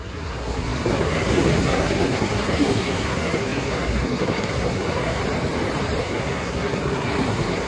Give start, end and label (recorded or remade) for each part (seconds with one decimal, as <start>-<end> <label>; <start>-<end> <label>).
0.0-5.2 remade; 5.2-6.0 recorded; 6.0-7.7 remade